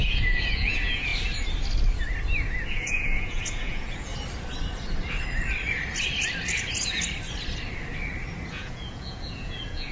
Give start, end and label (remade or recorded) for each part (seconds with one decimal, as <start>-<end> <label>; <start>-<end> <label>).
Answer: 0.0-1.1 remade; 1.1-2.7 recorded; 2.7-4.1 remade; 4.1-8.5 recorded; 8.5-9.9 remade